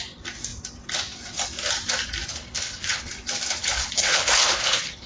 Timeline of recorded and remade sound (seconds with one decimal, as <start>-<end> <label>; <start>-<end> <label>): 0.0-2.3 recorded; 2.3-3.1 remade; 3.1-3.6 recorded; 3.6-5.1 remade